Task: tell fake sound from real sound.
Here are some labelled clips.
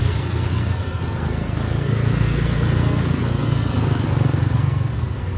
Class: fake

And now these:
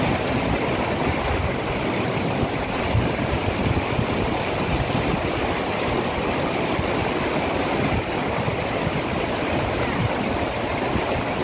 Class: fake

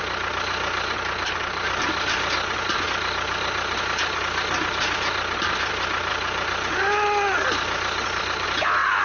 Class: real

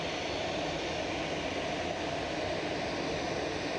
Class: real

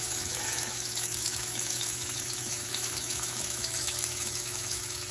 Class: fake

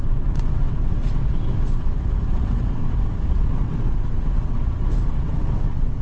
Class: fake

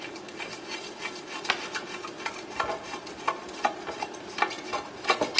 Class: real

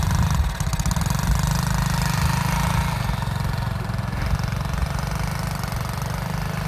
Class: real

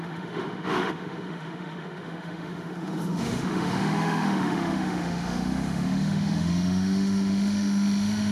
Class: fake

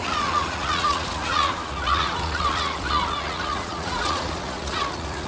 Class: fake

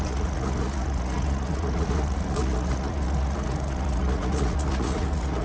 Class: fake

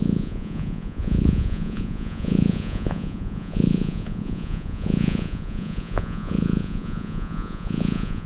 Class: fake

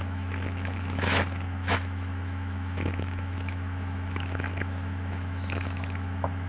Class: fake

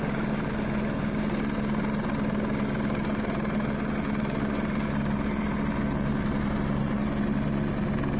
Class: real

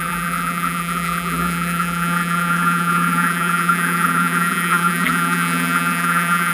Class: fake